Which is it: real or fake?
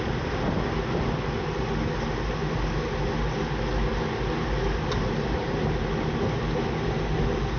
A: real